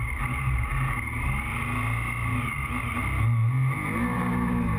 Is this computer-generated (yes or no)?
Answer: no